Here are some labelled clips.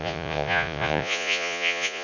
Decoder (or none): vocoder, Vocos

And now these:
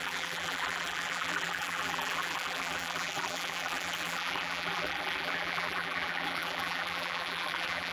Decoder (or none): vocoder, BigVGAN v2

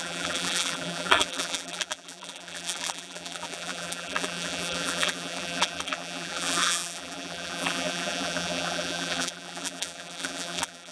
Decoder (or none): vocoder, BigVGAN v2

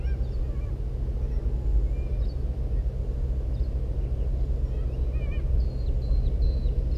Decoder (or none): none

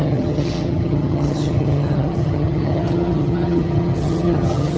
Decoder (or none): vocoder, HiFi-GAN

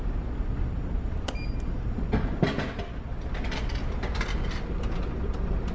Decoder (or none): none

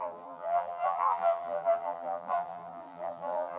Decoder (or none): vocoder, BigVGAN v2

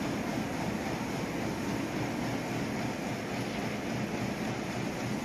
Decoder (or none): none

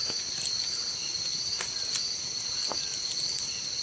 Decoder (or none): none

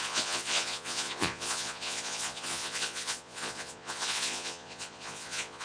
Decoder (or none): vocoder, Vocos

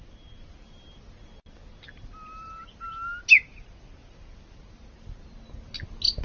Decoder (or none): none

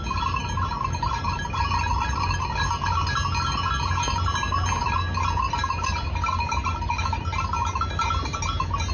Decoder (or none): none